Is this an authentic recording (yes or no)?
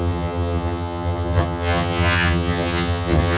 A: no